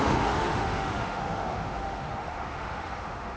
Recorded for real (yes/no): no